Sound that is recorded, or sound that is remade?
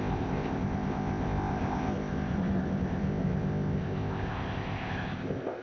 remade